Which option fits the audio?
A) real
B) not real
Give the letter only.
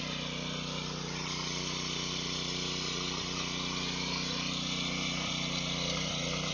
A